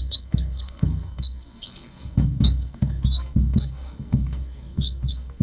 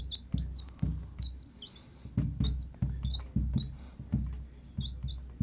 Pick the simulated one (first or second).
first